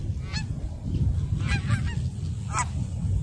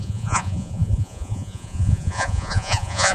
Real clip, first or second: first